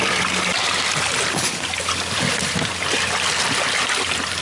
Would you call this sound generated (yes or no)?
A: no